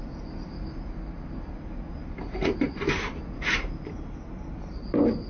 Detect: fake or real real